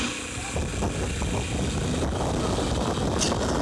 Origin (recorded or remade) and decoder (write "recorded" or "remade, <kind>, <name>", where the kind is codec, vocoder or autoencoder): recorded